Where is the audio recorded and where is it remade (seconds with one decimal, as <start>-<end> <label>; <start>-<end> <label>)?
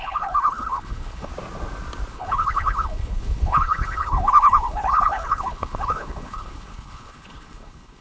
0.0-1.3 remade; 1.3-2.1 recorded; 2.1-8.0 remade